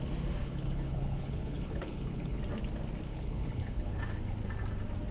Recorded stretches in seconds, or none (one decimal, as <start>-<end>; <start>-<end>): 0.0-0.4; 2.4-3.1; 4.0-5.1